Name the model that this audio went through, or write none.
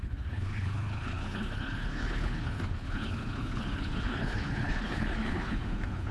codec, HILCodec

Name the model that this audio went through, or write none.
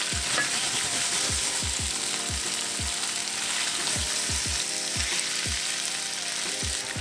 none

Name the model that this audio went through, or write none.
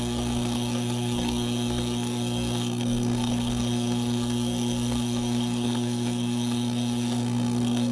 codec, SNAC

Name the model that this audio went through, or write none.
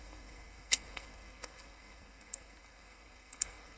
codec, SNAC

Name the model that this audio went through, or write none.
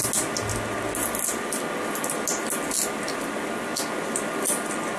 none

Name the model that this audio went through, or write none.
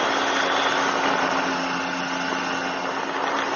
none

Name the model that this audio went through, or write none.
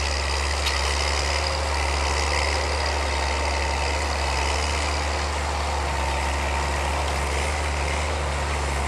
none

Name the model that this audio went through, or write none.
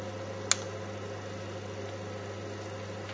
none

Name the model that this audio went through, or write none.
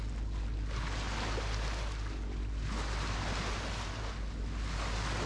none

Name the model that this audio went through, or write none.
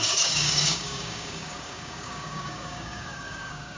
codec, DAC